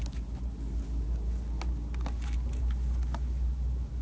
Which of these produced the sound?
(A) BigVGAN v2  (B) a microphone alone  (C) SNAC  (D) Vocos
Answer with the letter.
B